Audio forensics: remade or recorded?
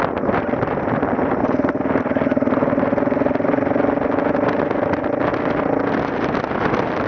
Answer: recorded